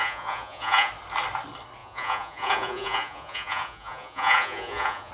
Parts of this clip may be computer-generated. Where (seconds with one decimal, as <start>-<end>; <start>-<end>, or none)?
0.0-0.9; 1.8-5.1